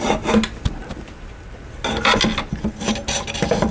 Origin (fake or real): real